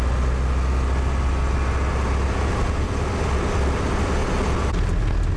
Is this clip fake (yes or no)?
no